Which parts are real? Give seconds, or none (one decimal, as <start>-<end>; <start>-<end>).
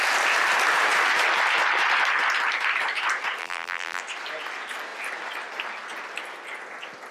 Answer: 0.0-3.4; 4.0-7.1